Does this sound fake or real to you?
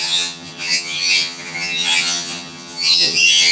fake